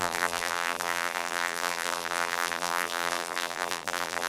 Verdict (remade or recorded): remade